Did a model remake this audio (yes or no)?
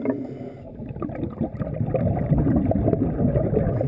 no